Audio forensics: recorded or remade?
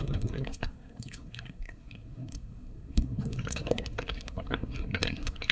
remade